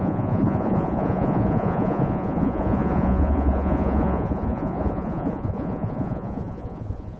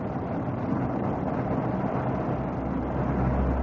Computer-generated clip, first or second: first